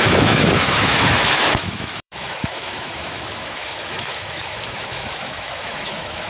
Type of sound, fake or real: fake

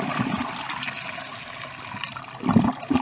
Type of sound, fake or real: real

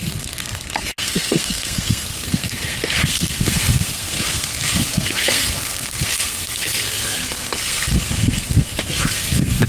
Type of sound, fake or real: fake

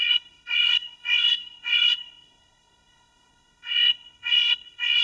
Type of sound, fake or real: fake